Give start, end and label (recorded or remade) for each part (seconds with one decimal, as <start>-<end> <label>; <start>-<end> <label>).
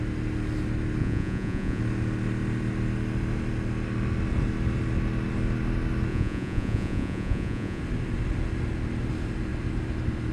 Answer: 0.0-1.0 recorded; 1.0-1.8 remade; 1.8-6.1 recorded; 6.1-7.8 remade; 7.8-10.3 recorded